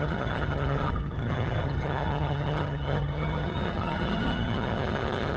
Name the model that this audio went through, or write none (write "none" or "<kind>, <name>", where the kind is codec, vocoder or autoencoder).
vocoder, HiFi-GAN